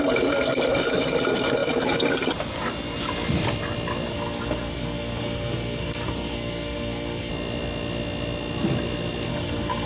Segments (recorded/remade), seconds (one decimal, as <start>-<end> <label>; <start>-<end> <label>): 0.0-4.1 recorded; 4.1-7.3 remade; 7.3-9.3 recorded; 9.3-9.9 remade